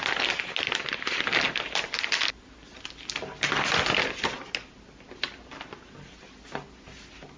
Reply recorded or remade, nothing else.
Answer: recorded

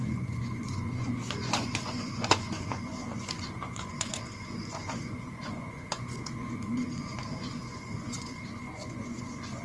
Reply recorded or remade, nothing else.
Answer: remade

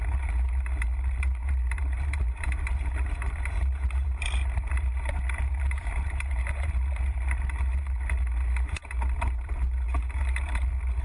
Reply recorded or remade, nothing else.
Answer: remade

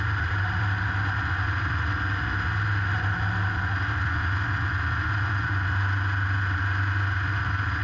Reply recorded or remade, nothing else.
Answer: recorded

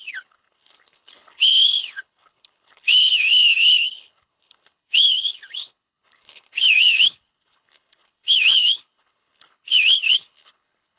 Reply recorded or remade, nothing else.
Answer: remade